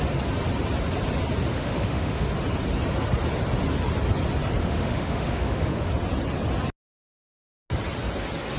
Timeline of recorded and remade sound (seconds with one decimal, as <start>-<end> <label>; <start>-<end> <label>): 0.0-1.5 recorded; 1.5-2.3 remade; 2.3-4.6 recorded; 4.6-5.9 remade; 5.9-8.6 recorded